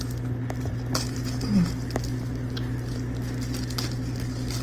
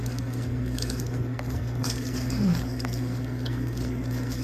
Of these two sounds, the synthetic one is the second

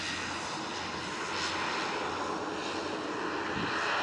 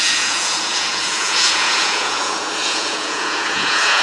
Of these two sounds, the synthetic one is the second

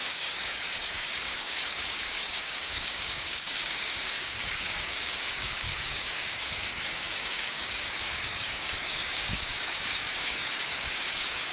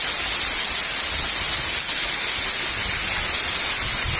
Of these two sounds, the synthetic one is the first